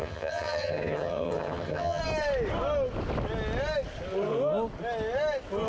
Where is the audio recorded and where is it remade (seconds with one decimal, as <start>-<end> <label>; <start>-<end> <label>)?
0.0-2.0 remade; 2.0-5.7 recorded